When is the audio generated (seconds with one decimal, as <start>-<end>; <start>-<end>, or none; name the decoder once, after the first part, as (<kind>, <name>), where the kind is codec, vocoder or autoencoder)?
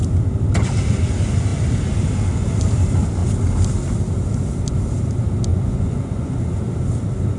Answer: 5.5-6.5 (vocoder, Vocos)